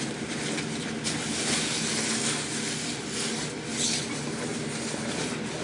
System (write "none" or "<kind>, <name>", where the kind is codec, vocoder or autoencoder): none